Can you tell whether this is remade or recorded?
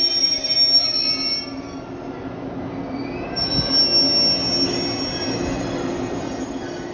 recorded